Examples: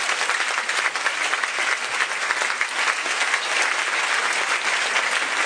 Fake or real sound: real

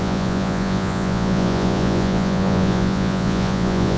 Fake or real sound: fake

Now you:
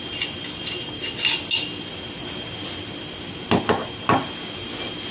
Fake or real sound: real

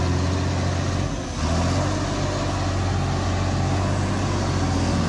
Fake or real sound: real